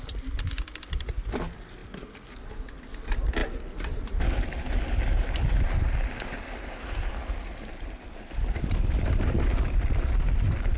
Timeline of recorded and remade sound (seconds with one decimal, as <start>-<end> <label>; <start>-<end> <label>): 0.0-10.8 recorded